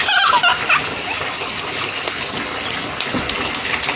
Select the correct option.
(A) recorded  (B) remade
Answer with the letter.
A